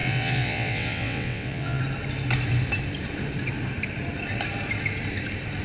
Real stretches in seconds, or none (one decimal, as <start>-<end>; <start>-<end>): 1.8-5.6